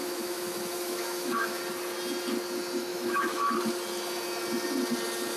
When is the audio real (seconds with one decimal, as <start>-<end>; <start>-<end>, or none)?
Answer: 1.6-2.9; 3.5-5.4